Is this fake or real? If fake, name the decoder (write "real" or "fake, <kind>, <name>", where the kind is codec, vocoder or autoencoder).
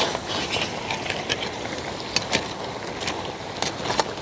real